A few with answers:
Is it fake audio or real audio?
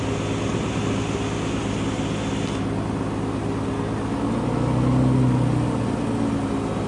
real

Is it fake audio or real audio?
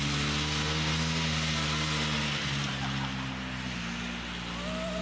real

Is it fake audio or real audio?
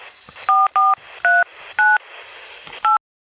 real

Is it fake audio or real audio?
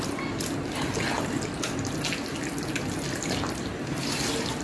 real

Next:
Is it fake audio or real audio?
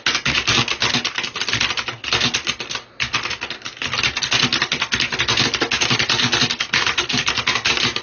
real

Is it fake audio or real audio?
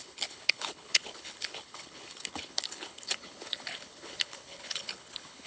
fake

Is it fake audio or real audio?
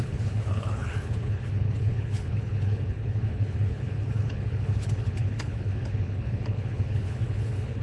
fake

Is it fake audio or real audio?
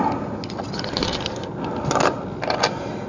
real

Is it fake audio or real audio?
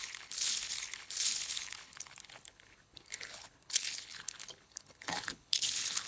fake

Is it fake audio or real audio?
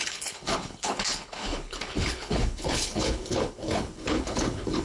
fake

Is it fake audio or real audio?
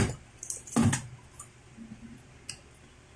real